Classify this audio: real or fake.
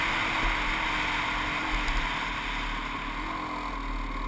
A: real